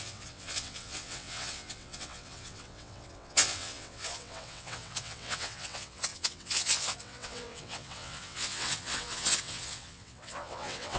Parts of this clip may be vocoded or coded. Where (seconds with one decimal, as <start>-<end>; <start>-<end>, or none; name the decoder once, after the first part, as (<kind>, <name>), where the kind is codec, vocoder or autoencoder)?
0.0-11.0 (vocoder, WaveNeXt)